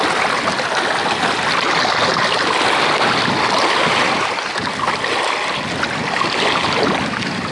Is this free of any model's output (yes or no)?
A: yes